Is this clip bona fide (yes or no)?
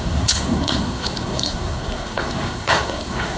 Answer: no